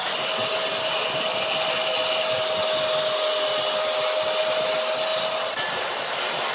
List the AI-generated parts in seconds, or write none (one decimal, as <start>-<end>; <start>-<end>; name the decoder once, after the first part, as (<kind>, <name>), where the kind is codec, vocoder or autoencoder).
none